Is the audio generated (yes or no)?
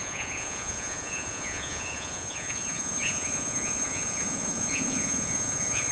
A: yes